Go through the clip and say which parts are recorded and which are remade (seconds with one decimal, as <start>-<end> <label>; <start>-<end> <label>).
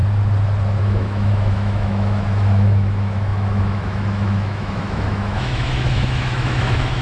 0.0-0.8 recorded; 0.8-7.0 remade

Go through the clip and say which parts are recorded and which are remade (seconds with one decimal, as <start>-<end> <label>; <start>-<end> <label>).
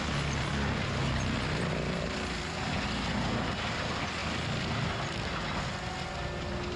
0.0-6.8 recorded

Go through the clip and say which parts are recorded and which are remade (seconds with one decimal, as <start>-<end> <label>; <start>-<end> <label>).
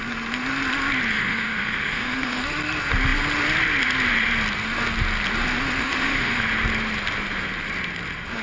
0.0-1.1 recorded; 1.1-2.4 remade; 2.4-5.8 recorded; 5.8-6.4 remade; 6.4-8.4 recorded